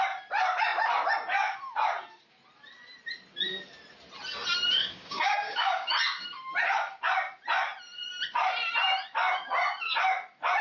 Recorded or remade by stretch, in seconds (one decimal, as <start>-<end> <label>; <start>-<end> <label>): 0.0-4.8 recorded; 4.8-5.9 remade; 5.9-10.6 recorded